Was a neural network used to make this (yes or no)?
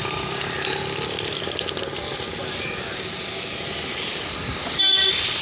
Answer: no